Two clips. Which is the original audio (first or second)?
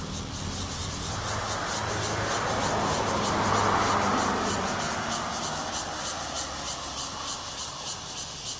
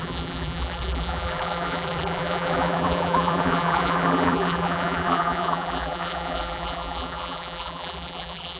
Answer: first